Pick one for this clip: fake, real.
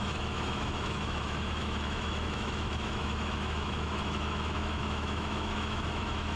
fake